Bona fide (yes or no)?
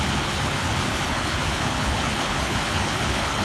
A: no